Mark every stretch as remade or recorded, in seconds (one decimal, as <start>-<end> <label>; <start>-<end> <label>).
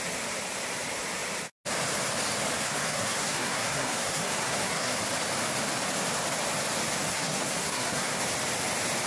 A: 0.0-2.6 recorded; 2.6-5.0 remade; 5.0-7.1 recorded; 7.1-8.2 remade; 8.2-9.1 recorded